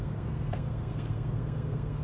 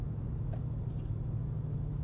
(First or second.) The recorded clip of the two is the second